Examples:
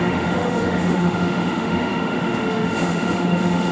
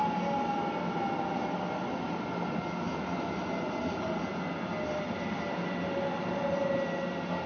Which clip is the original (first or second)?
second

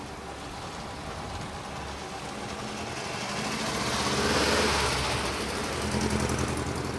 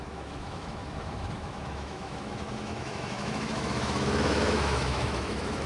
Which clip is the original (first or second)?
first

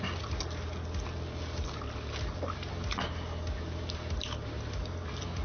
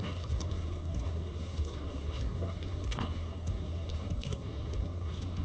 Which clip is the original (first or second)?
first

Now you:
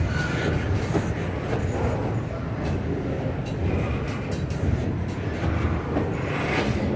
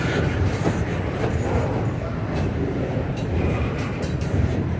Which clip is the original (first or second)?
first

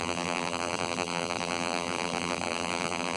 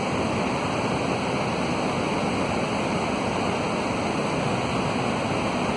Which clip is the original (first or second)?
second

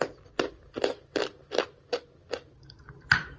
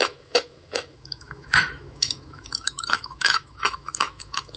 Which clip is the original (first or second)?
first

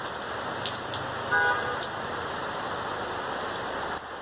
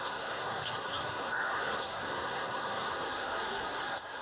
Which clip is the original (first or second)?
first